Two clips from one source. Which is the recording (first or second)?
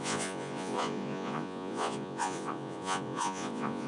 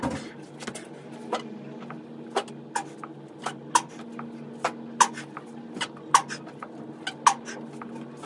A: second